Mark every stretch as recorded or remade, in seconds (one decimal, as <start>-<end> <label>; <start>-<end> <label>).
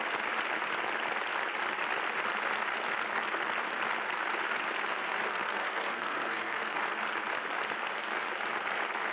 0.0-4.9 recorded; 4.9-6.8 remade; 6.8-9.1 recorded